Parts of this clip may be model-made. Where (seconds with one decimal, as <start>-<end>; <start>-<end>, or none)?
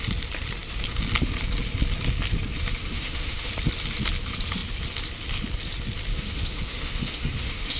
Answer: 2.8-3.5; 6.1-7.8